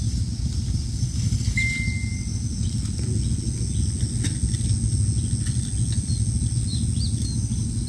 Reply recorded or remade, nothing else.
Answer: recorded